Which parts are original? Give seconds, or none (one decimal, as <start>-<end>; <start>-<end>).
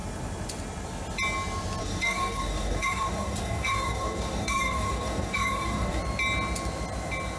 0.0-1.8; 6.0-7.4